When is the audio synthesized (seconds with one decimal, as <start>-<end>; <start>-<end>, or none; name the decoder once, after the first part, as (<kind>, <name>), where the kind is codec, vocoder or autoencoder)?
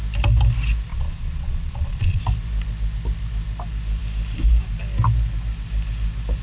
0.9-2.2 (vocoder, Vocos)